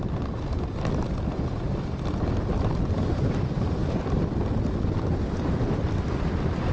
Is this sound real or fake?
fake